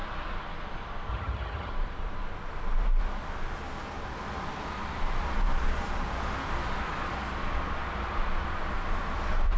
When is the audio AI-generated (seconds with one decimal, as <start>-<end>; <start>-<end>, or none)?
1.1-1.7